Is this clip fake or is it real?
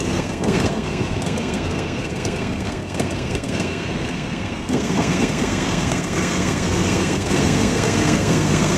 fake